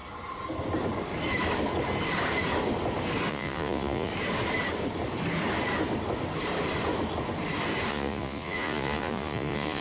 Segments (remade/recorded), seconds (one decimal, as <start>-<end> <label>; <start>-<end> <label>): 0.0-3.3 recorded; 3.3-4.1 remade; 4.1-7.9 recorded; 7.9-9.8 remade